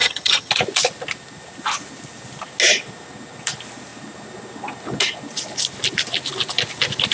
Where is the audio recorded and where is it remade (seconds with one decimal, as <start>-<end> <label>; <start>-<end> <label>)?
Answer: 0.0-0.5 remade; 0.5-7.1 recorded